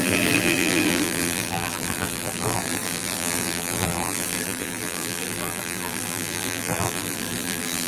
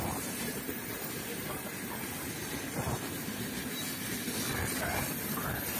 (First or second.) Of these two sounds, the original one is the second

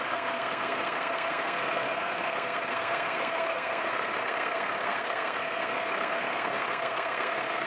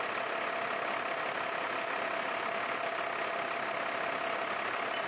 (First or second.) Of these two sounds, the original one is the second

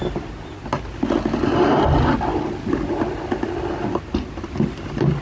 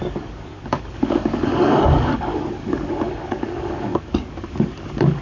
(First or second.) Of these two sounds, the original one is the first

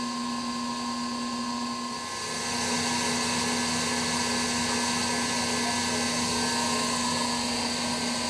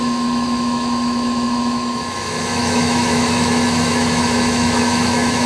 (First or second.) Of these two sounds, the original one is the first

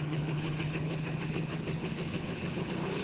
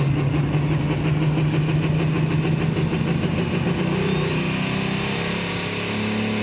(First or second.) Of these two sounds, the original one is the second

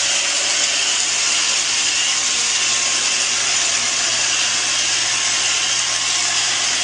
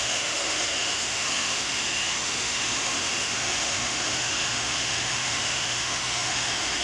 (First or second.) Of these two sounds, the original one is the first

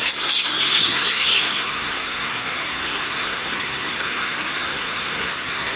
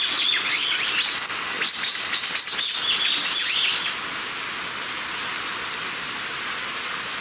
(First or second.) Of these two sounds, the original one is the second